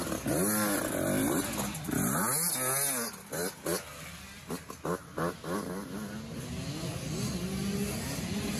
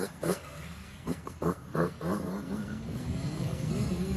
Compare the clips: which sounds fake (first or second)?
second